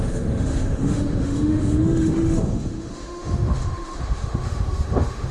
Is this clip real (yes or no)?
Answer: no